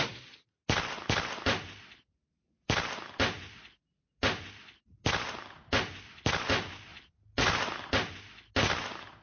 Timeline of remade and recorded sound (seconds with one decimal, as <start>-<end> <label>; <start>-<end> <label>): 0.0-9.2 recorded